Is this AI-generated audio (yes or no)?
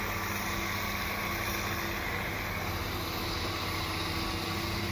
no